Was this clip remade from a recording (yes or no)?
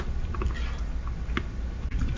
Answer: no